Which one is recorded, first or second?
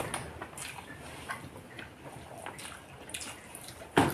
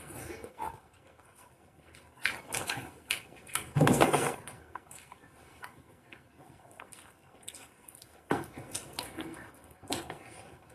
first